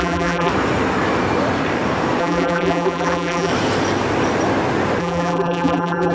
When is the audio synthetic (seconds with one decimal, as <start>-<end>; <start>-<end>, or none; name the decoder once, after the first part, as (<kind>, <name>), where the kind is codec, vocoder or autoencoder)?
0.0-0.5 (vocoder, BigVGAN v2); 2.2-3.5; 5.0-6.1